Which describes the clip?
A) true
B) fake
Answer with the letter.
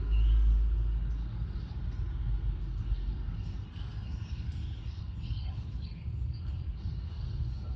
B